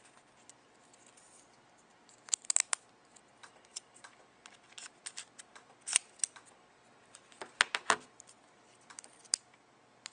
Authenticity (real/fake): real